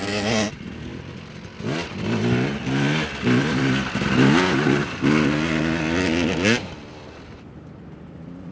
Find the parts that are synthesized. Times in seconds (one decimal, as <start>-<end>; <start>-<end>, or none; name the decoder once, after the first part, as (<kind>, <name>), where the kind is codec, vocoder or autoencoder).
none